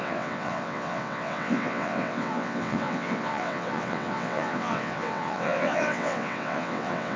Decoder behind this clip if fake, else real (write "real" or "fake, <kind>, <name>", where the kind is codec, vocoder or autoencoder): fake, vocoder, WaveNeXt